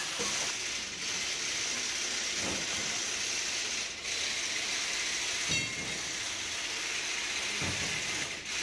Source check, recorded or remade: recorded